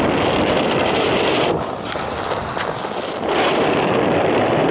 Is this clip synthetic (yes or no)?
no